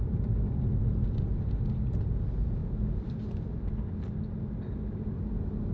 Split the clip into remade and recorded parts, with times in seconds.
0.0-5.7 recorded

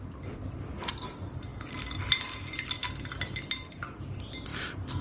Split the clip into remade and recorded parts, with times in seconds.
0.0-5.0 recorded

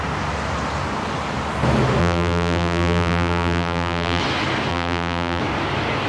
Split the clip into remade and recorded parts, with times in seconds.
0.0-2.0 recorded; 2.0-4.2 remade; 4.2-4.7 recorded; 4.7-5.4 remade; 5.4-6.1 recorded

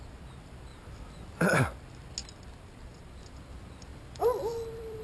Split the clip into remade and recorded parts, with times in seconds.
0.0-0.7 recorded; 0.7-1.6 remade; 1.6-3.9 recorded; 3.9-5.0 remade

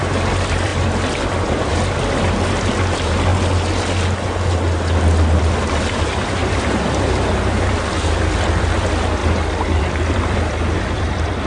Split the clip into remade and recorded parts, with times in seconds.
0.0-0.7 remade; 0.7-1.2 recorded; 1.2-3.3 remade; 3.3-5.5 recorded; 5.5-9.2 remade; 9.2-9.8 recorded; 9.8-11.5 remade

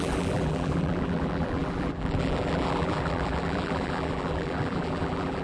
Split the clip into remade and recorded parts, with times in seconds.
0.0-5.4 remade

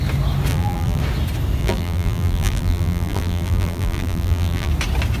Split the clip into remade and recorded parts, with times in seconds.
0.0-0.5 recorded; 0.5-1.0 remade; 1.0-1.6 recorded; 1.6-4.7 remade; 4.7-5.2 recorded

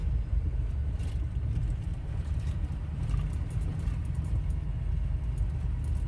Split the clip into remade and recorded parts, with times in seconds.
0.0-0.5 remade; 0.5-1.9 recorded; 1.9-3.0 remade; 3.0-3.7 recorded; 3.7-4.3 remade; 4.3-6.1 recorded